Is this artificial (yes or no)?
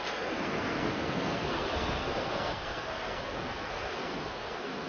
yes